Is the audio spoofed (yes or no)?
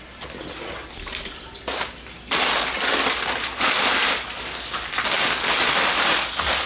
no